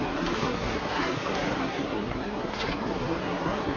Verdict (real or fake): fake